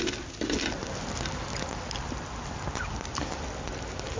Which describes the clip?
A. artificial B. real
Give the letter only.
B